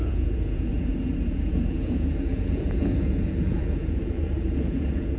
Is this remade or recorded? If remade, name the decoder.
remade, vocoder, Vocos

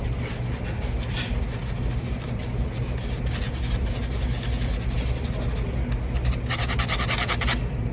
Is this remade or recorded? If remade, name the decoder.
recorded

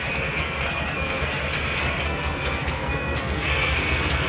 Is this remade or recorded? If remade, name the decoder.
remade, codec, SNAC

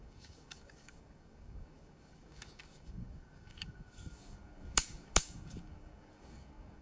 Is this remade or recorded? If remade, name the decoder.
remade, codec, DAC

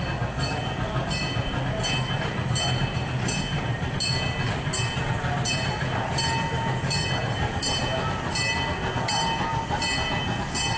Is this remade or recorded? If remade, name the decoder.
recorded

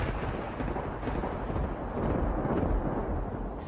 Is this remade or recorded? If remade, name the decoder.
recorded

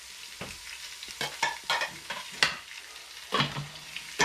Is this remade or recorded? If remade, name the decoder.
recorded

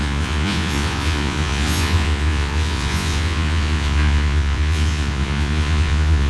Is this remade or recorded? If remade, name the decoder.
remade, vocoder, Vocos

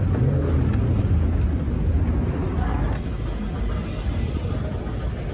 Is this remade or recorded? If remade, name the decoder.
recorded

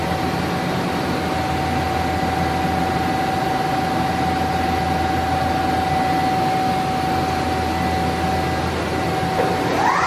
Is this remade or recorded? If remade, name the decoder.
recorded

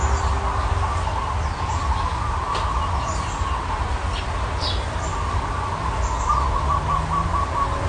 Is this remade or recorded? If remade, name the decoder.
recorded